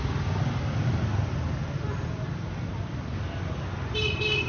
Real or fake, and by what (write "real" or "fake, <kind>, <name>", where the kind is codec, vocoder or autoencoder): real